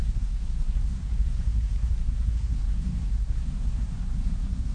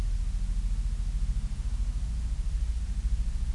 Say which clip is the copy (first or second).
first